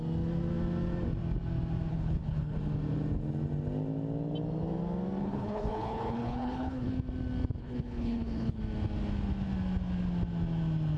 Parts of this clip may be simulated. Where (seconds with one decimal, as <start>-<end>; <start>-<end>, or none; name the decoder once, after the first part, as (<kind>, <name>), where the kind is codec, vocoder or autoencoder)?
1.9-2.6 (codec, HILCodec); 5.2-6.9; 7.6-8.6